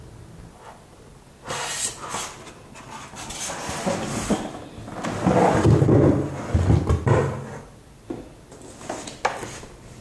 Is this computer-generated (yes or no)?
no